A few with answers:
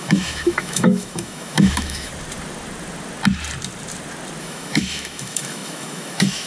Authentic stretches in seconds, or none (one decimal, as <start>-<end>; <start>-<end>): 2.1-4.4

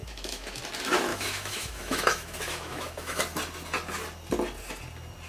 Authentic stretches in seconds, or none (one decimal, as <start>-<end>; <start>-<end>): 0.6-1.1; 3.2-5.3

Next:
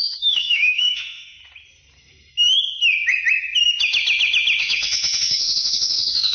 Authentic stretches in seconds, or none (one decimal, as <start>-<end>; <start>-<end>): 1.4-4.6

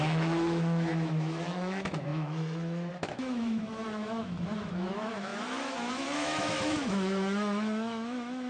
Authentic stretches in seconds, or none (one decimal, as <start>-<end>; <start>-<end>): none

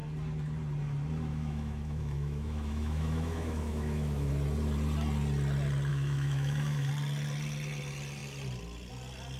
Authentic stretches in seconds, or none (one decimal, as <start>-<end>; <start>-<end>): 0.0-1.3; 4.3-5.9; 6.9-9.4

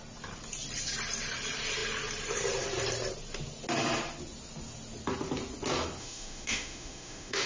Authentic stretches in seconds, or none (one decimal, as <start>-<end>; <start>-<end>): 0.0-6.0